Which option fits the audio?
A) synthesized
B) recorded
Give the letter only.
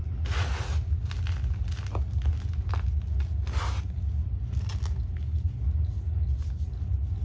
B